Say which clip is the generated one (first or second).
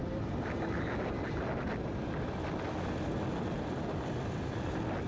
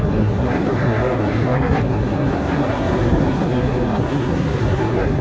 second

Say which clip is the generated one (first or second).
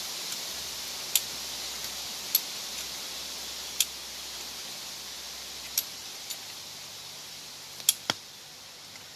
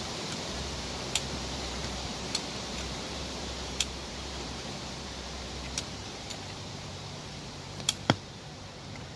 second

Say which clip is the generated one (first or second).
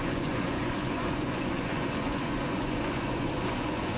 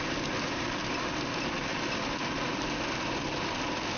first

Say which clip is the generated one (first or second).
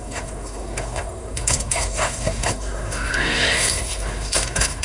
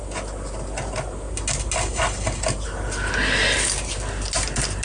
first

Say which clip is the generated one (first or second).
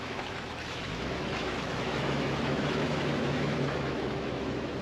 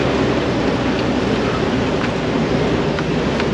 first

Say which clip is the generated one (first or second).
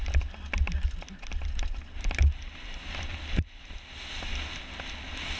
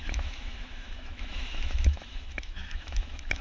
second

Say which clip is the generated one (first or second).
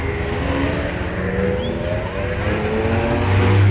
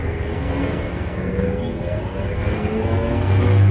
second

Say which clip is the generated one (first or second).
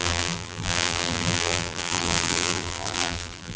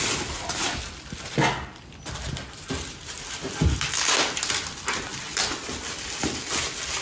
first